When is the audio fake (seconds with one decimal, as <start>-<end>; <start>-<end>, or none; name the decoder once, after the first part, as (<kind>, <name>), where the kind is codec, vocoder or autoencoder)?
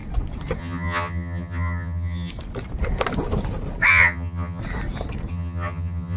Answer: 0.6-2.3 (vocoder, HiFi-GAN); 3.9-4.6; 5.3-6.2